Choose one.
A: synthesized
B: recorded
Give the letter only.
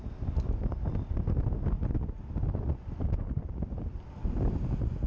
B